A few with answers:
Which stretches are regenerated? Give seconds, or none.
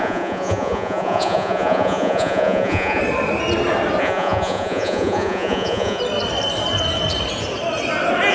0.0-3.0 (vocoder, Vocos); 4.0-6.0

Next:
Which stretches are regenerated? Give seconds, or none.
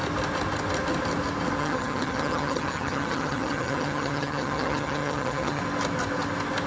1.6-5.6 (vocoder, HiFi-GAN)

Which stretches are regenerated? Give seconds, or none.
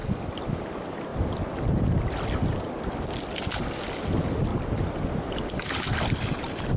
none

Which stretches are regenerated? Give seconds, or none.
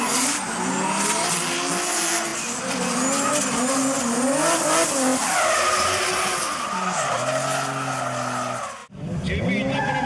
8.8-9.3 (vocoder, BigVGAN v2)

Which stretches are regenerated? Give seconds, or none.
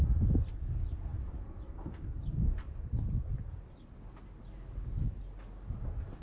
none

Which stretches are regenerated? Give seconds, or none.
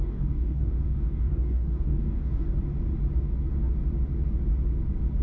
0.0-2.6 (codec, DAC)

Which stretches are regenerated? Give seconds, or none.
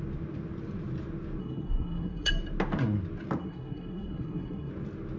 1.4-2.3 (codec, SNAC); 3.4-4.7